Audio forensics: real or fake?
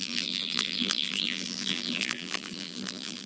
fake